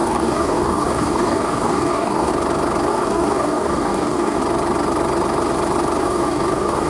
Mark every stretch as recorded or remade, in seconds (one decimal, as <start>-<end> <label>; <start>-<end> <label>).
0.0-2.3 remade; 2.3-2.9 recorded; 2.9-4.4 remade; 4.4-6.0 recorded; 6.0-6.9 remade